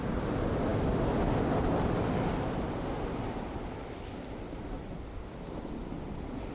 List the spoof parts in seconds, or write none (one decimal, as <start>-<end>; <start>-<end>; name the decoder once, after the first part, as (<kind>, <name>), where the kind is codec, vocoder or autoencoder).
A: none